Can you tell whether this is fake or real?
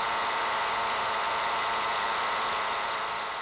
real